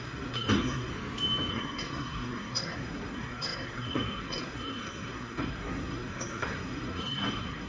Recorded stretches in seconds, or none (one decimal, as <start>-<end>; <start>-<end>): 0.9-1.5